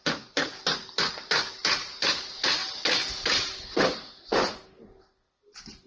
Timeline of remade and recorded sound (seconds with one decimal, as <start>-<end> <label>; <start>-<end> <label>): 0.0-5.9 recorded